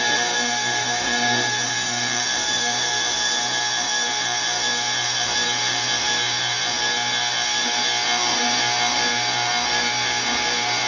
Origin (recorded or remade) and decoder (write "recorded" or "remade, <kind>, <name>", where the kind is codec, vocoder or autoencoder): remade, autoencoder, DAC-VAE